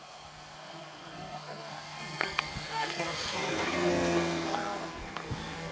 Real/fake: fake